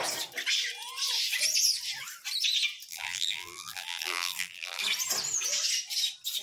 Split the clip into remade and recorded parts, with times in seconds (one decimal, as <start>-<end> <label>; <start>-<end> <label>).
0.0-2.9 recorded; 2.9-4.8 remade; 4.8-6.4 recorded